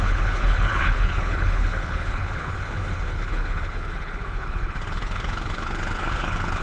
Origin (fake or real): fake